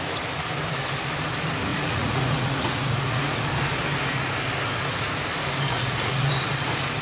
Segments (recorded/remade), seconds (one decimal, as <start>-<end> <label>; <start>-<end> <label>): 0.0-1.7 recorded; 1.7-3.4 remade; 3.4-5.7 recorded; 5.7-6.3 remade; 6.3-7.0 recorded